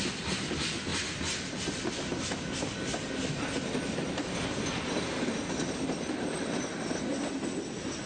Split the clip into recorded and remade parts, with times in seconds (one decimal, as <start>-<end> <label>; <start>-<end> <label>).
0.0-8.1 recorded